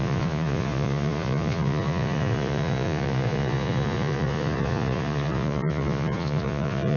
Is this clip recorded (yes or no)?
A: no